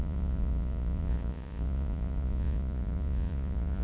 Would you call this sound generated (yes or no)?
yes